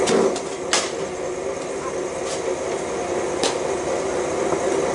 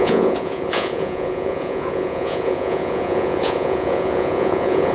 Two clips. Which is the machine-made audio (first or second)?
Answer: second